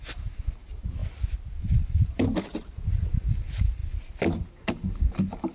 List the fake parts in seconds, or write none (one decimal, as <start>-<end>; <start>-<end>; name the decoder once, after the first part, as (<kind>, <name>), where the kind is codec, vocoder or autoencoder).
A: 0.0-1.0 (vocoder, BigVGAN v2); 1.6-2.5; 3.0-3.8; 4.5-5.5